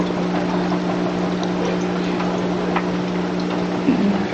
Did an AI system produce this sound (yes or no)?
no